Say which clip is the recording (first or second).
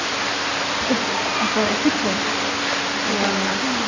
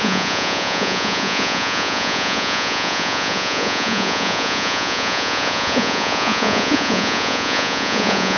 first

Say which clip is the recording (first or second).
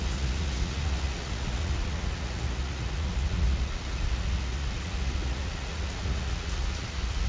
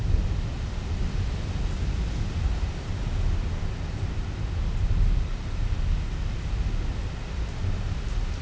second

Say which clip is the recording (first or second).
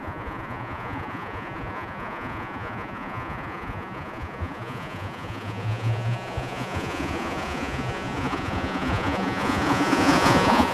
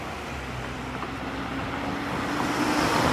second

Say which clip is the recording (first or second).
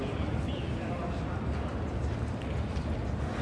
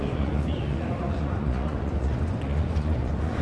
first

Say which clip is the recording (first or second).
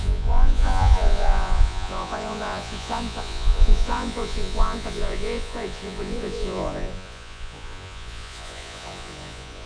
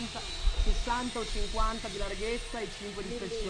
second